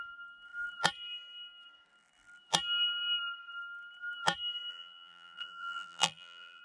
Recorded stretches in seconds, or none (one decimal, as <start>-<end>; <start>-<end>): 0.0-4.7